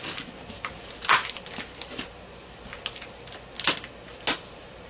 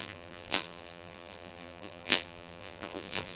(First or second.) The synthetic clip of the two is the second